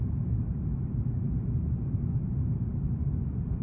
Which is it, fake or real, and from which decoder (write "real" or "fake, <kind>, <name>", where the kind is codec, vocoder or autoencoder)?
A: real